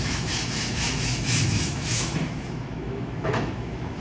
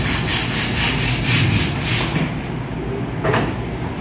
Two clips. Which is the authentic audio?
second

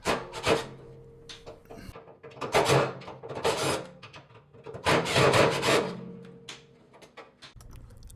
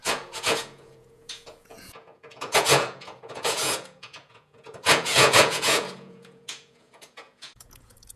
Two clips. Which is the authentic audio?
first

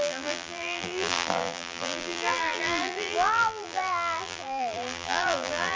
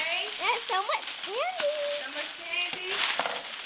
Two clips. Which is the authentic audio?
second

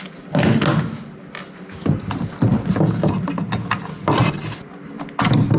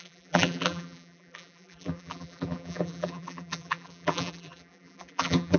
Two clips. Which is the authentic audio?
first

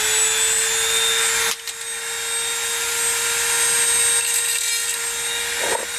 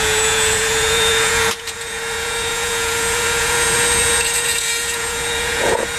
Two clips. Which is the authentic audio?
first